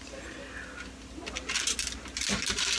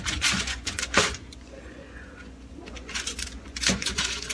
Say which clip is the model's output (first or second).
second